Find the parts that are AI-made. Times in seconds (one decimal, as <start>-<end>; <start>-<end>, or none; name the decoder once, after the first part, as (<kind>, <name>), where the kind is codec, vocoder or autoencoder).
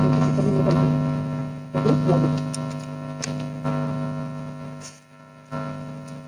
none